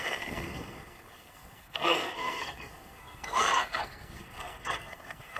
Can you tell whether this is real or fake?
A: fake